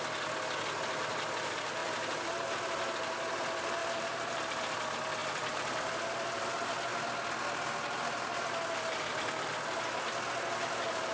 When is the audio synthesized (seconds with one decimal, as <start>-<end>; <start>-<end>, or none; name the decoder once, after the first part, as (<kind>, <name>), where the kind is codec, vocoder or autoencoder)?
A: 1.8-2.6 (vocoder, BigVGAN v2); 3.8-4.6; 5.2-6.5